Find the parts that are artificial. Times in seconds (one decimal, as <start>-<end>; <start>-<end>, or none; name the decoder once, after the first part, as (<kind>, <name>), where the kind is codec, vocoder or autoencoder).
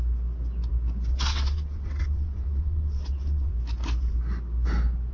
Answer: 1.1-3.5 (vocoder, WaveNeXt)